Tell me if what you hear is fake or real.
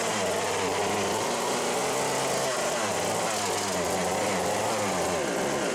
real